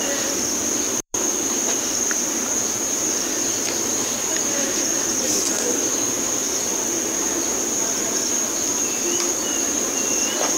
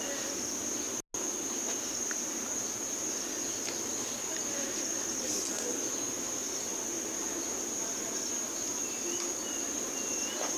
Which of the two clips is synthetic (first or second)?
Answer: first